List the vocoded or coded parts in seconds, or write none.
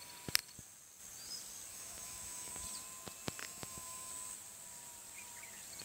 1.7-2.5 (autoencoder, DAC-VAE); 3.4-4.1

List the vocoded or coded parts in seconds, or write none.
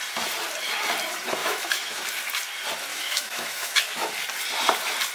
1.4-2.0 (autoencoder, DAC-VAE); 2.9-4.1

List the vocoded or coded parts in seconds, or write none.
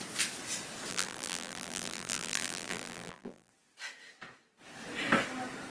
0.9-3.5 (vocoder, BigVGAN v2)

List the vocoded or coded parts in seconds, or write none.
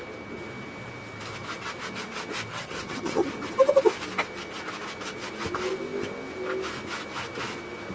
2.5-3.3 (vocoder, HiFi-GAN)